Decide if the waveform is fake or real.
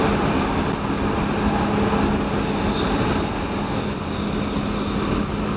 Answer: real